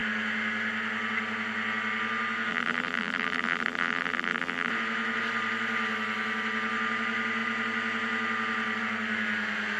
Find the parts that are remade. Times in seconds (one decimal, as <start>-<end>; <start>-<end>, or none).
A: 2.5-4.7